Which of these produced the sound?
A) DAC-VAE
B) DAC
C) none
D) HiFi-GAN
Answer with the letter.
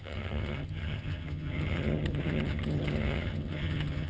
D